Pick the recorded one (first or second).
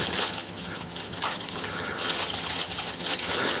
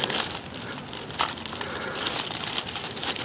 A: second